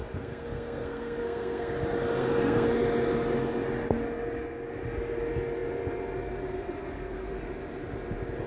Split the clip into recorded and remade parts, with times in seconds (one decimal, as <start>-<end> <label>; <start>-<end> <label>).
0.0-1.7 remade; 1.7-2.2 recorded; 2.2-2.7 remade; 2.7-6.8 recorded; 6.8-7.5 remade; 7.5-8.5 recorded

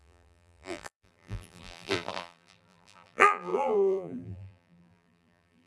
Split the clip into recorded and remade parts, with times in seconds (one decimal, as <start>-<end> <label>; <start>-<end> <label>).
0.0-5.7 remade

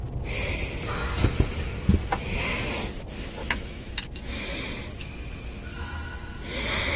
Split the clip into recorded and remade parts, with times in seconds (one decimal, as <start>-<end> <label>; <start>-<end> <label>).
0.0-3.4 recorded; 3.4-4.4 remade; 4.4-7.0 recorded

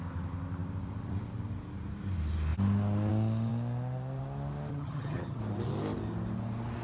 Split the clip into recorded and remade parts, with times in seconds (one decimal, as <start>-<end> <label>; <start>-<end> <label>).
0.0-4.7 recorded; 4.7-5.4 remade; 5.4-6.8 recorded